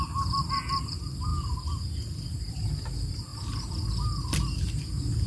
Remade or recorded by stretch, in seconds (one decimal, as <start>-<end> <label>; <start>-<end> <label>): 0.0-5.3 recorded